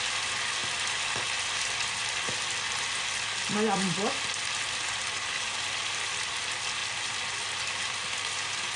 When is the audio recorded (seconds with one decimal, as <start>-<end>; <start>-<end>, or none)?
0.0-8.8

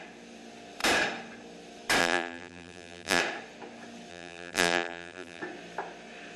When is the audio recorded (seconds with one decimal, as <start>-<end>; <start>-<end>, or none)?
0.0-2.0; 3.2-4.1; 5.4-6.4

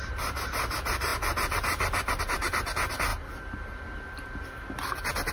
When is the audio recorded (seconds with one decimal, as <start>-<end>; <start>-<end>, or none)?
1.1-2.2; 3.1-5.3

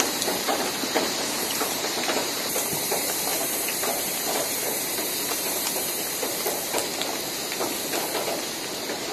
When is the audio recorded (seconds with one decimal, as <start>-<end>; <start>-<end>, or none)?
6.8-8.7

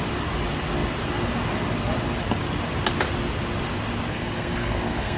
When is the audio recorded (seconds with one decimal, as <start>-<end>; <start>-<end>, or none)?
0.0-4.1